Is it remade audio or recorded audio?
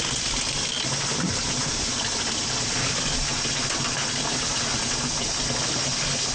recorded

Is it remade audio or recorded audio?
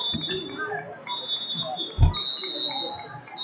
recorded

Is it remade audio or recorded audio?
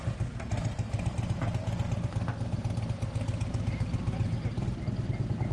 recorded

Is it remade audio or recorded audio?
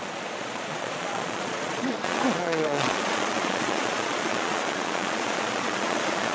remade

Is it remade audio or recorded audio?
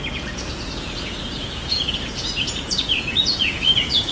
remade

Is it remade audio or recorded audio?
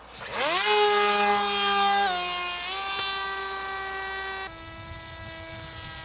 recorded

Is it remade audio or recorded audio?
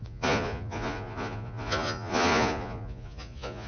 remade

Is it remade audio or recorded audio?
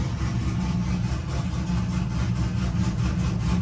recorded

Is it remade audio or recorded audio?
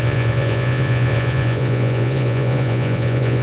remade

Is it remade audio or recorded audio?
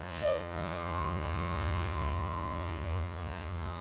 remade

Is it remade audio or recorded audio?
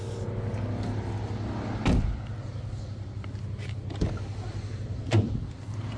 recorded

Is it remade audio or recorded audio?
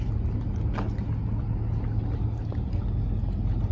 recorded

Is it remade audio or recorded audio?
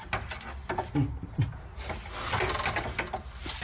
recorded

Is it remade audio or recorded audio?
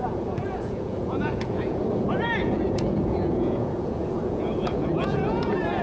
remade